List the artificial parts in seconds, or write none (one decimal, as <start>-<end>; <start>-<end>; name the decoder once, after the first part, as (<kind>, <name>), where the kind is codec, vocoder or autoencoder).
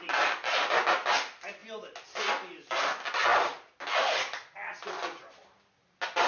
none